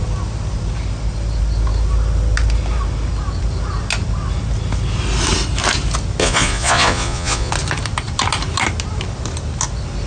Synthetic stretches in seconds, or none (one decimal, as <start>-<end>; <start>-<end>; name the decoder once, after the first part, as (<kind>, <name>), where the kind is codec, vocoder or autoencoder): 6.2-7.5 (vocoder, Vocos)